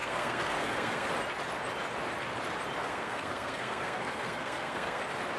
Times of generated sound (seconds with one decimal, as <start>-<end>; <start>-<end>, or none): 0.0-1.1; 2.8-5.0